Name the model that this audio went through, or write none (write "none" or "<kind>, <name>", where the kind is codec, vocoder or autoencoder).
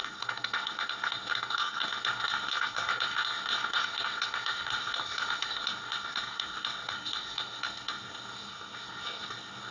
codec, SNAC